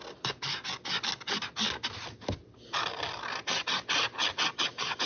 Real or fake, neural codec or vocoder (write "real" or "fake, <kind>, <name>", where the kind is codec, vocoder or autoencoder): real